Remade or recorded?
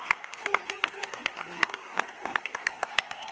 remade